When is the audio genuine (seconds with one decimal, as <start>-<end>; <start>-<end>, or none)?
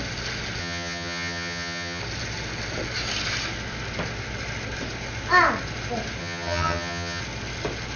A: 0.0-0.6; 2.0-6.2; 7.2-8.0